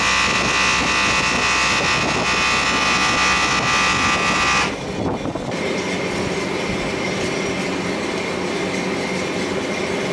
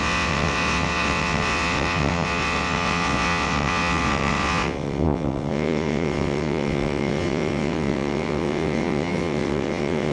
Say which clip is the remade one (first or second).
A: second